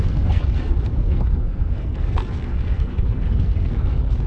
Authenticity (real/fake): fake